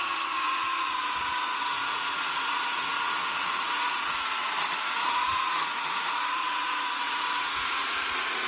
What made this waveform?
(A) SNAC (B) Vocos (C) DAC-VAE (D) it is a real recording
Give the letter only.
B